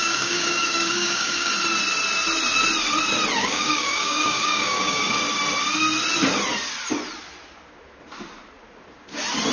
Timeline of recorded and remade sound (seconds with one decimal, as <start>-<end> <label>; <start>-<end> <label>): 0.0-1.5 remade; 1.5-3.4 recorded; 3.4-5.1 remade; 5.1-9.5 recorded